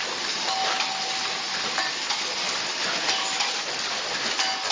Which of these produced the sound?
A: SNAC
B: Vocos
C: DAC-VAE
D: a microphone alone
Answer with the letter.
D